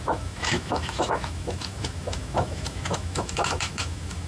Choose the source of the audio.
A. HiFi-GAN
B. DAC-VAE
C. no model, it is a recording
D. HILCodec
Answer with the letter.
B